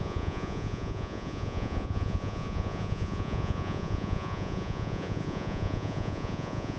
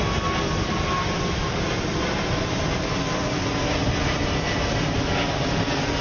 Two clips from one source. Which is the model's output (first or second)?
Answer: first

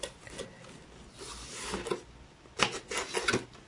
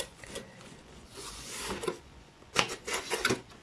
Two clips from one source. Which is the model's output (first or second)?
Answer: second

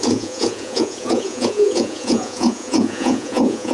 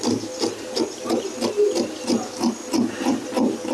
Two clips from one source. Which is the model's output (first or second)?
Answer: first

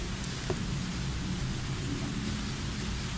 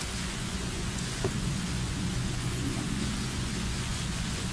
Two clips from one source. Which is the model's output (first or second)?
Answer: second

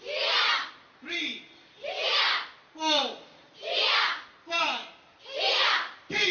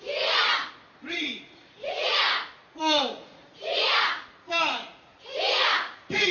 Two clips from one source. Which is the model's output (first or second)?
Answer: second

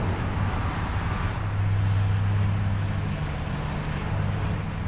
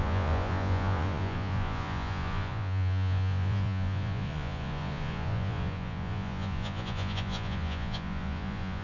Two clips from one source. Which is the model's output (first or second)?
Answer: second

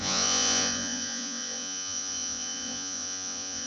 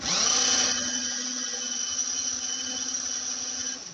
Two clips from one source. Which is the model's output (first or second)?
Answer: first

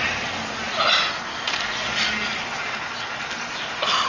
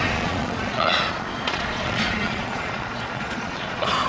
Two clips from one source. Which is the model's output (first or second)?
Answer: second